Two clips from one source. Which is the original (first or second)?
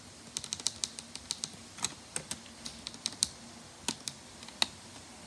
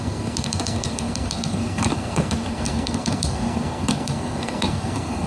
first